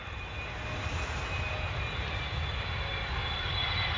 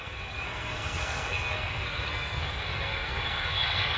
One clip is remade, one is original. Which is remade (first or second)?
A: second